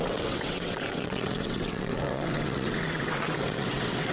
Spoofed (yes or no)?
yes